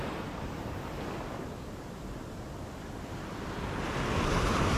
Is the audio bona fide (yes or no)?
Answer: yes